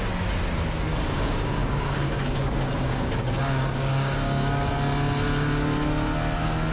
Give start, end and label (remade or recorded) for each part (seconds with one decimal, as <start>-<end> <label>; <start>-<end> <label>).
0.0-0.9 recorded; 0.9-4.7 remade; 4.7-6.7 recorded